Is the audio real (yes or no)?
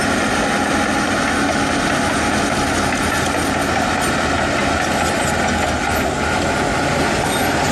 yes